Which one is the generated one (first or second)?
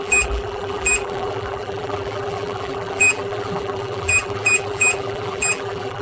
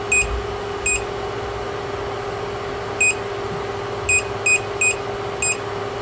first